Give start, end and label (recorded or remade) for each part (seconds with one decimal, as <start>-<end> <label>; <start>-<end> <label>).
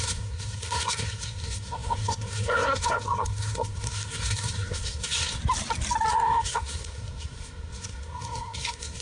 0.0-5.4 remade; 5.4-6.1 recorded; 6.1-9.0 remade